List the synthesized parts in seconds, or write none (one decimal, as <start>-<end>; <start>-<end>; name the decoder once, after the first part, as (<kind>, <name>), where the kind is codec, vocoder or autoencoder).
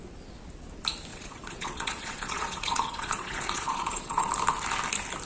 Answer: 1.1-4.3 (vocoder, Vocos)